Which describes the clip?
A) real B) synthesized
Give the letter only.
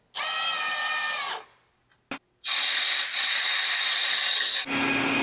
A